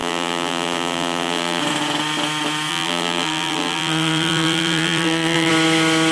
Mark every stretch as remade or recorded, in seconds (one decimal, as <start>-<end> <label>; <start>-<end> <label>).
0.0-1.6 remade; 1.6-2.7 recorded; 2.7-5.5 remade; 5.5-6.1 recorded